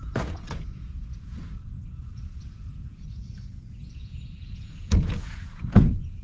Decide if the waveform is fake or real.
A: fake